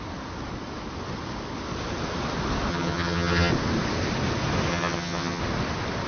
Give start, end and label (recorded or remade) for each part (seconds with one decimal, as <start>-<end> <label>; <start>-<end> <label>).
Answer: 0.0-2.7 recorded; 2.7-3.5 remade; 3.5-4.7 recorded; 4.7-5.4 remade; 5.4-6.1 recorded